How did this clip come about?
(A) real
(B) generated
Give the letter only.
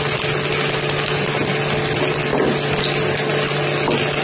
A